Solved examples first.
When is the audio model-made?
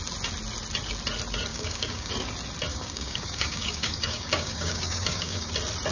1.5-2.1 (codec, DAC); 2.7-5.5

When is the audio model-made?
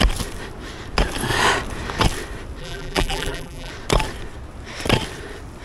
2.6-3.7 (vocoder, BigVGAN v2)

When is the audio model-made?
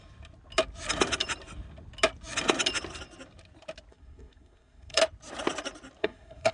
3.9-5.0 (codec, SNAC); 6.0-6.5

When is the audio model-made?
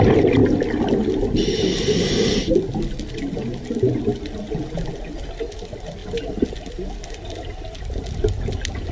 none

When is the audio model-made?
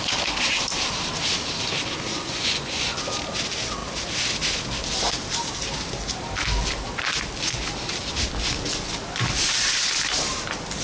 2.1-3.0 (vocoder, Vocos)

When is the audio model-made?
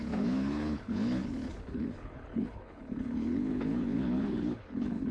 0.0-5.1 (codec, HILCodec)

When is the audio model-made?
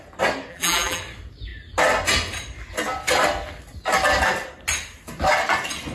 0.5-1.0 (vocoder, BigVGAN v2)